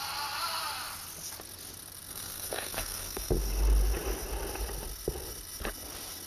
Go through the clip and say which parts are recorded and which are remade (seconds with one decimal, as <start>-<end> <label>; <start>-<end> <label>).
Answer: 0.0-2.1 recorded; 2.1-3.3 remade; 3.3-6.3 recorded